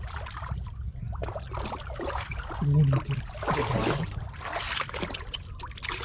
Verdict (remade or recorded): recorded